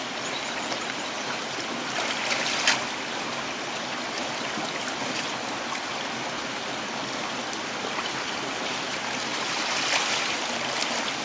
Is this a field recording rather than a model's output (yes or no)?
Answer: yes